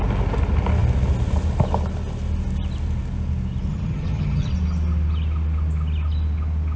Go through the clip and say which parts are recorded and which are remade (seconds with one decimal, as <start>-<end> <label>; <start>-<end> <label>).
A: 0.0-3.7 recorded; 3.7-4.5 remade; 4.5-6.8 recorded